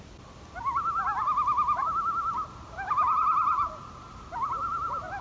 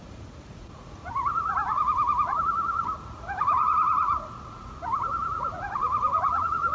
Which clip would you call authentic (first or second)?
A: first